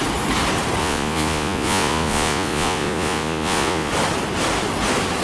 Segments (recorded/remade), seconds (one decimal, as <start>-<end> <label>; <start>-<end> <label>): 0.0-0.8 recorded; 0.8-3.9 remade; 3.9-5.2 recorded